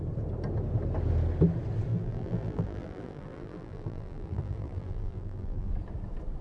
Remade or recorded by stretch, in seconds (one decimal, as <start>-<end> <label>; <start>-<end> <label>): 0.0-1.9 recorded; 1.9-5.7 remade; 5.7-6.4 recorded

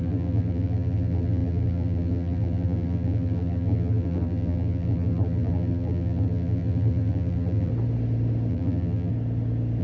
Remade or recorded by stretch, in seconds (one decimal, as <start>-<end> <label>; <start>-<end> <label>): 0.0-7.7 remade; 7.7-8.5 recorded; 8.5-9.1 remade; 9.1-9.8 recorded

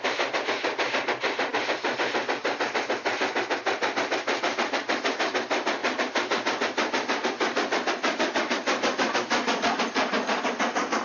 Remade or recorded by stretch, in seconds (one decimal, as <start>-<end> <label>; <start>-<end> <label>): 0.0-5.8 recorded; 5.8-10.6 remade; 10.6-11.0 recorded

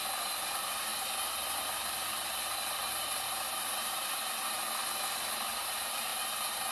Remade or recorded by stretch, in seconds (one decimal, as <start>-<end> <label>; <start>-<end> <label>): 0.0-0.9 remade; 0.9-1.6 recorded; 1.6-4.6 remade; 4.6-5.6 recorded; 5.6-6.1 remade; 6.1-6.7 recorded

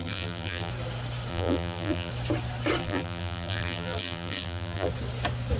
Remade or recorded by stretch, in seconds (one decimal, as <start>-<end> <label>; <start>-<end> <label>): 0.0-0.7 remade; 0.7-1.3 recorded; 1.3-2.1 remade; 2.1-2.8 recorded; 2.8-4.9 remade; 4.9-5.6 recorded